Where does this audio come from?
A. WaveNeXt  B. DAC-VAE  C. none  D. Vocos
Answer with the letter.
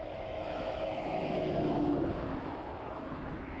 B